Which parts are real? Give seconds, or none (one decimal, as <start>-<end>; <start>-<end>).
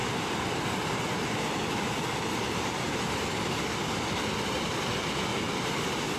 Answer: 0.8-5.3